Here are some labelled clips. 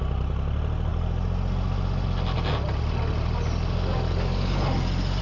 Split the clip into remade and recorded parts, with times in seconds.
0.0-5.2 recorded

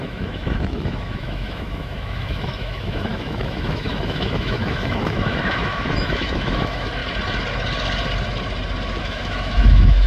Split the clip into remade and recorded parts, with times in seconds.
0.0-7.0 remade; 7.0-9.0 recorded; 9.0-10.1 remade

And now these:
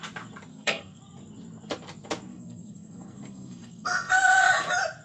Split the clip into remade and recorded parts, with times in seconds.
0.0-0.5 recorded; 0.5-1.0 remade; 1.0-2.3 recorded; 2.3-4.5 remade; 4.5-5.0 recorded

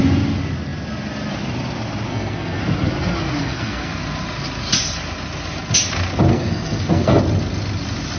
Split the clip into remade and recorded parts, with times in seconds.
0.0-2.1 recorded; 2.1-2.6 remade; 2.6-3.4 recorded; 3.4-3.9 remade; 3.9-6.3 recorded; 6.3-7.2 remade; 7.2-8.2 recorded

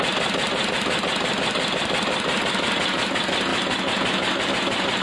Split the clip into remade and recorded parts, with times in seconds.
0.0-5.0 recorded

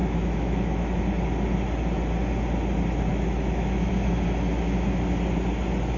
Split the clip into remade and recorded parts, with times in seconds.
0.0-1.0 remade; 1.0-3.1 recorded; 3.1-3.9 remade; 3.9-6.0 recorded

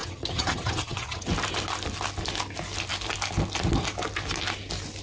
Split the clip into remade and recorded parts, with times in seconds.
0.0-1.3 remade; 1.3-5.0 recorded

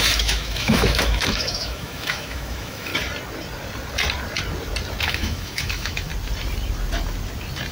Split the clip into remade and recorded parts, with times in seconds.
0.0-2.9 remade; 2.9-5.0 recorded; 5.0-6.1 remade; 6.1-7.7 recorded